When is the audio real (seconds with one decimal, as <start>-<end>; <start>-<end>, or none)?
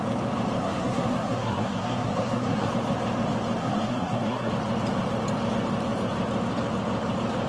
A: 0.0-0.6; 2.7-3.6; 4.5-7.5